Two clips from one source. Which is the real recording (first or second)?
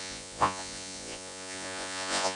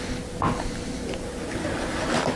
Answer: second